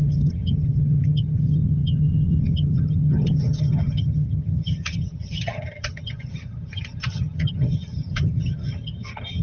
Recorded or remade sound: remade